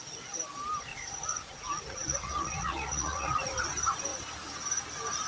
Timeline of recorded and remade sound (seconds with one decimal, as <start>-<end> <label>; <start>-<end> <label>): 0.0-0.9 recorded; 0.9-3.5 remade; 3.5-5.3 recorded